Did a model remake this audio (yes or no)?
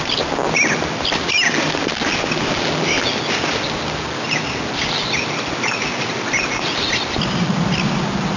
no